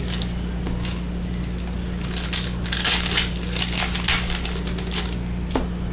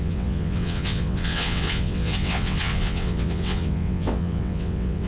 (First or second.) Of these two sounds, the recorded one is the first